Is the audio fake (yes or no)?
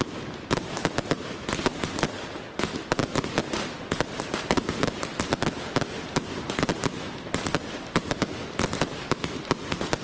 no